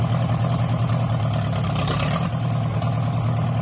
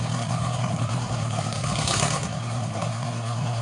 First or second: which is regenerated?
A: second